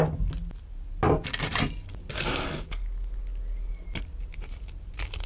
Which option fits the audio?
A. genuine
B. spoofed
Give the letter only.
A